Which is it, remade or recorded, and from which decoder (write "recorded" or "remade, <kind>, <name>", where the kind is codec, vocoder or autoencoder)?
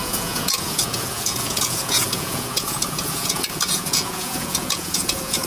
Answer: remade, vocoder, Vocos